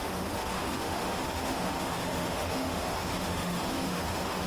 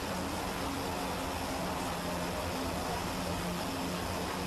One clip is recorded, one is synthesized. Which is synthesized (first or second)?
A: first